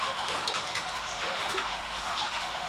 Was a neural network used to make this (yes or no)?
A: yes